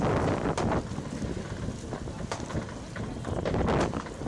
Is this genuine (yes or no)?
yes